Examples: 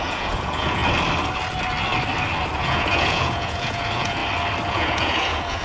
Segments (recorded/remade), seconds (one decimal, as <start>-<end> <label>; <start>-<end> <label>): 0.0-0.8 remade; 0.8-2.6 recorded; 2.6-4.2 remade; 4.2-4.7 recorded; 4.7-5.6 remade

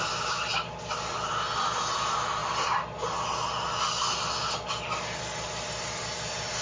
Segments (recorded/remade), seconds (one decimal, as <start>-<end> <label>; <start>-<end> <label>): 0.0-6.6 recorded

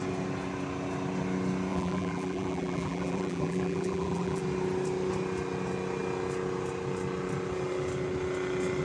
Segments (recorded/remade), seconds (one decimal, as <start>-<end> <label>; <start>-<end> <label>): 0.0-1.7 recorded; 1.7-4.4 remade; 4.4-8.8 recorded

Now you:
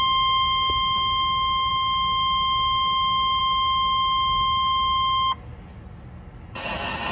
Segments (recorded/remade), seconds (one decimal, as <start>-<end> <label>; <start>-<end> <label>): 0.0-7.1 recorded

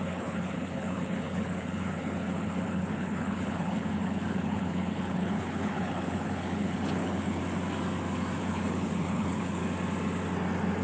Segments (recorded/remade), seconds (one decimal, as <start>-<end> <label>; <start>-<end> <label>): 0.0-7.4 remade; 7.4-8.4 recorded; 8.4-9.6 remade; 9.6-10.8 recorded

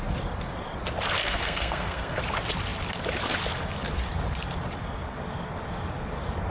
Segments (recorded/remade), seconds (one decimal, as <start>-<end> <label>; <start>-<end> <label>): 0.0-1.2 recorded; 1.2-2.2 remade; 2.2-6.5 recorded

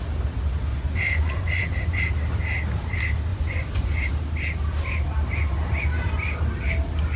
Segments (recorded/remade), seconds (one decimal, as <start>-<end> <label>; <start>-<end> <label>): 0.0-0.7 recorded; 0.7-2.0 remade; 2.0-3.3 recorded; 3.3-4.1 remade; 4.1-7.2 recorded